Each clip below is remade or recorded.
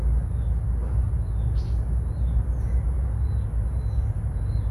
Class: recorded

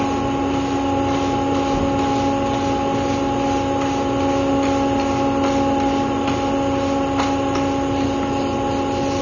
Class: recorded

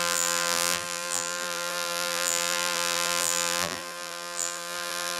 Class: remade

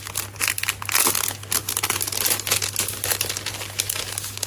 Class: recorded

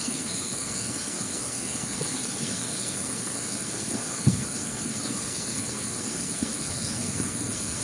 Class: remade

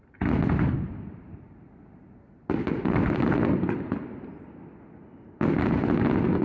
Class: recorded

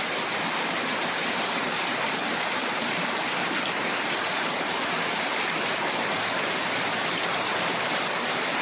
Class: remade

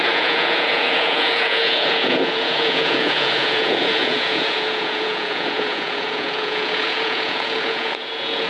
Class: remade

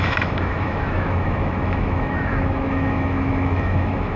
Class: remade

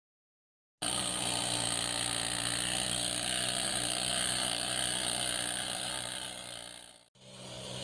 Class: recorded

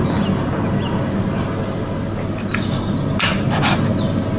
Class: recorded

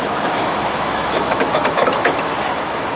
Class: remade